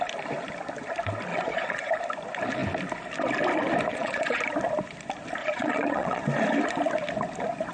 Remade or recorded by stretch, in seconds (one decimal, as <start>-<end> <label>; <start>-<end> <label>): 0.0-1.3 recorded; 1.3-1.9 remade; 1.9-3.9 recorded; 3.9-4.4 remade; 4.4-5.4 recorded; 5.4-6.2 remade; 6.2-7.7 recorded